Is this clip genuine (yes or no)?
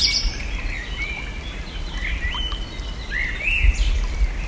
yes